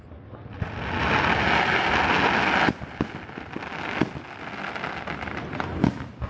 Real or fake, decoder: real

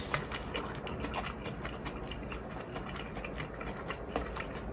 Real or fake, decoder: real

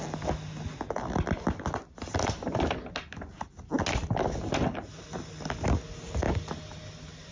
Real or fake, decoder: real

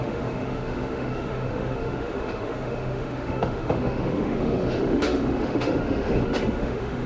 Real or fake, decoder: fake, autoencoder, DAC-VAE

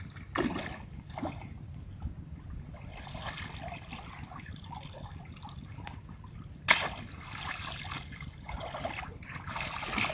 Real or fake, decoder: real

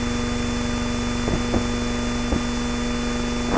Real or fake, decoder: real